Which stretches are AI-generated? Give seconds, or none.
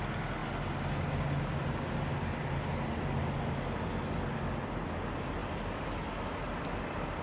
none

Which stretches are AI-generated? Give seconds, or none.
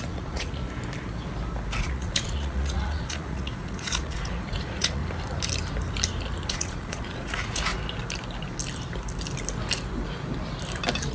0.0-0.6 (vocoder, Vocos); 1.8-5.0; 6.5-7.7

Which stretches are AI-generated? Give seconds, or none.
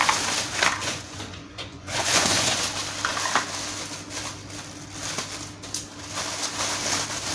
0.8-2.6 (vocoder, Vocos)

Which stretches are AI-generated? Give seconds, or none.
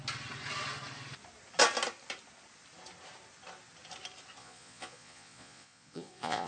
4.4-6.5 (vocoder, Vocos)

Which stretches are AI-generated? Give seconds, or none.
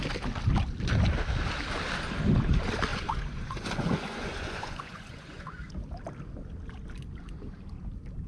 2.9-5.7 (vocoder, Vocos)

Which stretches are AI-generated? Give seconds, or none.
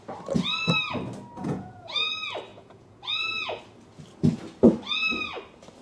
1.4-2.1 (vocoder, Vocos); 2.5-3.6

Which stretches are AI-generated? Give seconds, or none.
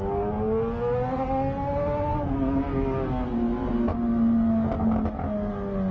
none